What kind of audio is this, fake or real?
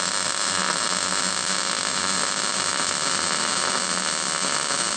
real